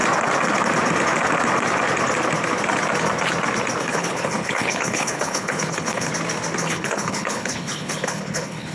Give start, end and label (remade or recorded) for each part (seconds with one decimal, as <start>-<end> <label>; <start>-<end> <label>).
0.0-3.8 recorded; 3.8-6.1 remade; 6.1-6.6 recorded; 6.6-8.7 remade